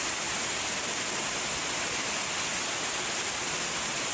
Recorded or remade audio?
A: recorded